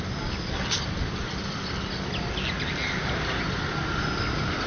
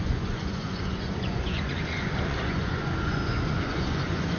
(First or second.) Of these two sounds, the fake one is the second